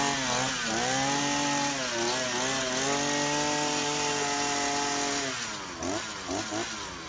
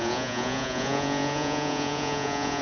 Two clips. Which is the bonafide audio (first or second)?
first